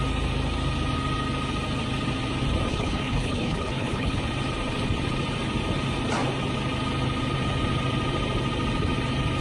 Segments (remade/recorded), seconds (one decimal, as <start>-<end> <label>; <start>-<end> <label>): 0.0-2.7 recorded; 2.7-4.2 remade; 4.2-9.4 recorded